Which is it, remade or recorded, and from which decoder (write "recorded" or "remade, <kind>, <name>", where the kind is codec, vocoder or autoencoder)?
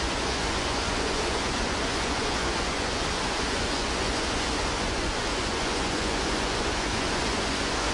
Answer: remade, vocoder, Vocos